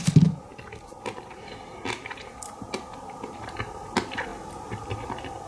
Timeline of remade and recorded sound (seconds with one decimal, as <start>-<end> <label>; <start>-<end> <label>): 0.0-5.5 recorded

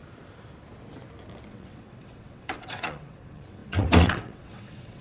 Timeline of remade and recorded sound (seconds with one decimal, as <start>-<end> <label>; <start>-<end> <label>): 0.0-1.5 recorded; 1.5-5.0 remade

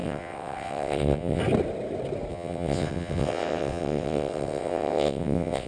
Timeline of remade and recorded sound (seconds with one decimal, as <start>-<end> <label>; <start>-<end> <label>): 0.0-1.4 remade; 1.4-2.3 recorded; 2.3-5.7 remade

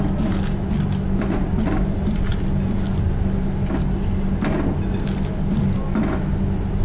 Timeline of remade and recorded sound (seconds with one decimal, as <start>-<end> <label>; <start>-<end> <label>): 0.0-6.8 recorded

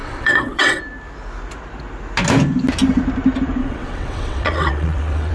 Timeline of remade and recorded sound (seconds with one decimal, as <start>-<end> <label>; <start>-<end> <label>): 0.0-0.8 remade; 0.8-3.6 recorded; 3.6-5.3 remade